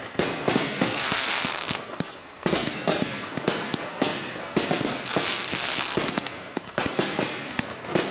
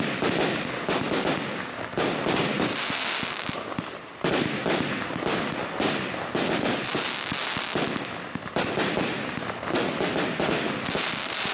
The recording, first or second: second